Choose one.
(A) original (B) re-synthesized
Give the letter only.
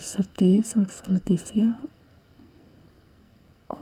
B